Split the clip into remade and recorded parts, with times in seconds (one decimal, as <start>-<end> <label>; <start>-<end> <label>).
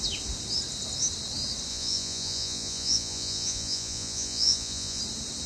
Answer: 0.0-1.7 recorded; 1.7-5.0 remade; 5.0-5.5 recorded